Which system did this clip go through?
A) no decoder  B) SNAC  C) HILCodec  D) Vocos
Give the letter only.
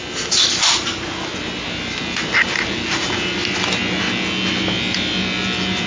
A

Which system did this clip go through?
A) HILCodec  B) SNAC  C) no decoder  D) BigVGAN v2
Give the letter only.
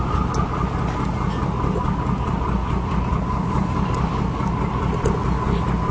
C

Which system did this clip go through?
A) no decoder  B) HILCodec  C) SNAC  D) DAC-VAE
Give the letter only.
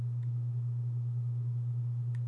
A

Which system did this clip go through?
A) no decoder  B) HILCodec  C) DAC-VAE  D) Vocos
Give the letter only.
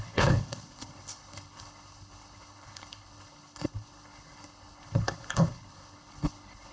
B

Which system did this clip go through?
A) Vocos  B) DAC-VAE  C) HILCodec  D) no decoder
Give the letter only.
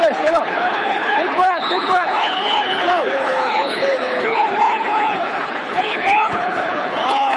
C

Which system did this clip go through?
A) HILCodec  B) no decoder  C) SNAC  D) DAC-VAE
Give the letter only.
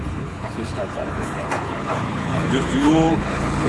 A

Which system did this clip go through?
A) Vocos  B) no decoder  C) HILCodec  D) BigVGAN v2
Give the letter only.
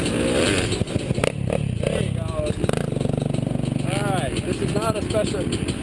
B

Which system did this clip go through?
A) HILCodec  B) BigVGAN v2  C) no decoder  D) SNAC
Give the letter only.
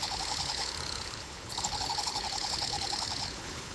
A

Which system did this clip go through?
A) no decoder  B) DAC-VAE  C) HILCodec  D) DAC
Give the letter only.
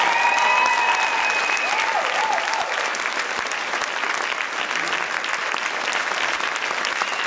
A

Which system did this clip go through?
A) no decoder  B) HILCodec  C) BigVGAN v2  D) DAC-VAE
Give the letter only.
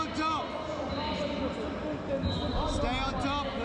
A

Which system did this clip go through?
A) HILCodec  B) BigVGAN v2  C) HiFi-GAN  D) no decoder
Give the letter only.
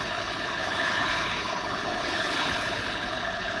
A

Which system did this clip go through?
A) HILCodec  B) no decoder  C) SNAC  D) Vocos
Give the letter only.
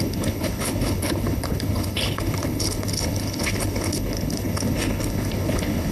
A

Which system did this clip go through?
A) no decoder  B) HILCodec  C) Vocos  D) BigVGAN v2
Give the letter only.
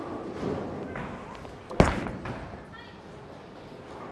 A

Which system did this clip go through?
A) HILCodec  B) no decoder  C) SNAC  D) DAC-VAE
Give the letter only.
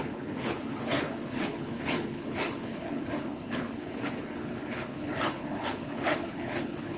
A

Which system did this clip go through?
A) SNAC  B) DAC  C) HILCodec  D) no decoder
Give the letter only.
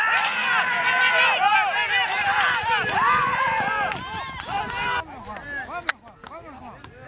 D